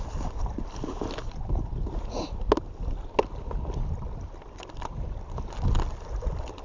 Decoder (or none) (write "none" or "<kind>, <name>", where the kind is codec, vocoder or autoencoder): none